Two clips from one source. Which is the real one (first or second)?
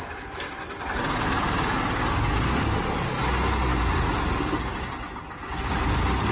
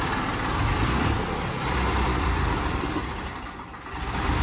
first